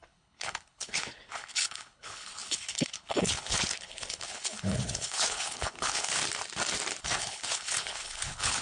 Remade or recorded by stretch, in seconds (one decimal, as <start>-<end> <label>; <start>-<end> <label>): 0.0-6.2 remade; 6.2-7.0 recorded; 7.0-8.6 remade